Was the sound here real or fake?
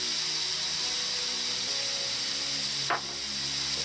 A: real